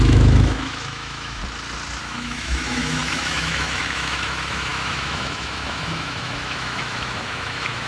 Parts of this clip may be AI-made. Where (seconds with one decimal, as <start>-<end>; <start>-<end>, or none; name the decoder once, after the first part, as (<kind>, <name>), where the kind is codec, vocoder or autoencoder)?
0.0-1.4 (autoencoder, DAC-VAE); 2.0-7.9